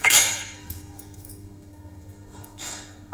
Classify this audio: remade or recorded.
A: remade